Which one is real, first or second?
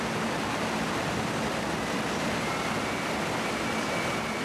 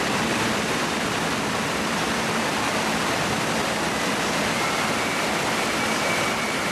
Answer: first